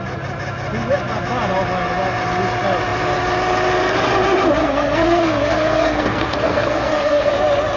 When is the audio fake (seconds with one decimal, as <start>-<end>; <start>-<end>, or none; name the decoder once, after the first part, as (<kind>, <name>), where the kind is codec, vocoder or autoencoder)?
4.6-7.3 (codec, SNAC)